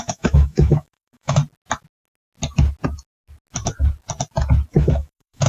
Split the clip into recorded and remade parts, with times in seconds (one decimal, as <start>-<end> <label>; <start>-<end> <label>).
0.0-1.4 remade; 1.4-4.7 recorded; 4.7-5.5 remade